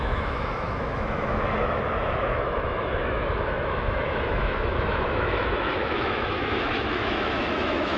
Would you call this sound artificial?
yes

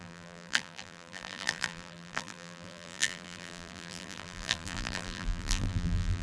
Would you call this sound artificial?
yes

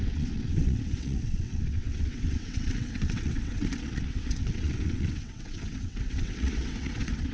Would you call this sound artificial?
yes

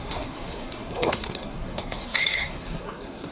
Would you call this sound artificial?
yes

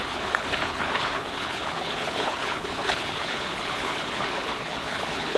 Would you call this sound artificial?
yes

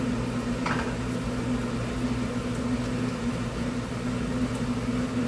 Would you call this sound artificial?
no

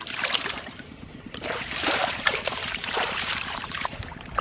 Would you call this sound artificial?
yes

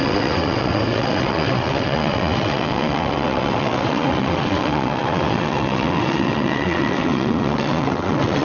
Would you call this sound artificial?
yes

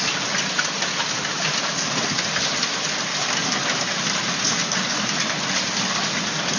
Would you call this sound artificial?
no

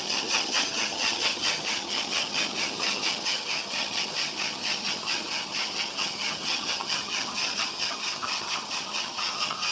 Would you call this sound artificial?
yes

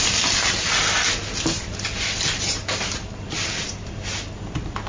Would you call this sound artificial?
no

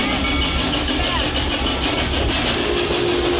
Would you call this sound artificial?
no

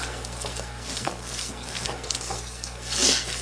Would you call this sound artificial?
yes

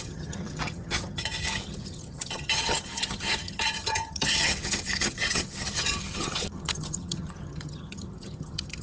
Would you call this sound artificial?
yes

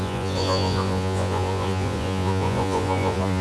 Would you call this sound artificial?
yes